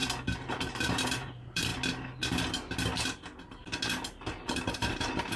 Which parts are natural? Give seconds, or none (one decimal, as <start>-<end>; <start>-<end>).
0.0-0.7; 1.7-4.5

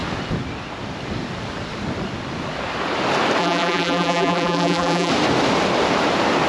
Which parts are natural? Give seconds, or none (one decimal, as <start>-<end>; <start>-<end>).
0.0-3.4; 5.1-6.5

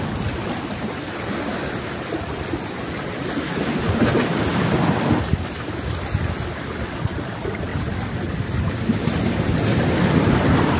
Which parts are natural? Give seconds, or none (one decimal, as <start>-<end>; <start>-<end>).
0.0-7.7; 8.6-10.8